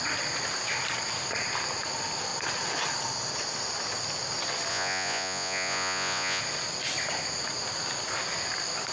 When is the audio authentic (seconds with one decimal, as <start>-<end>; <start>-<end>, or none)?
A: 0.0-4.7; 6.4-8.9

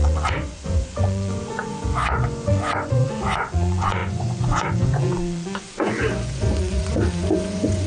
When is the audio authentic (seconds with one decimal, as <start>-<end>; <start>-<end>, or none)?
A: none